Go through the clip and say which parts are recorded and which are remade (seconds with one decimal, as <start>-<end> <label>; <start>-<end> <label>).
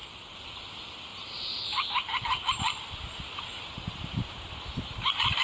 0.0-0.7 remade; 0.7-1.1 recorded; 1.1-4.3 remade; 4.3-5.4 recorded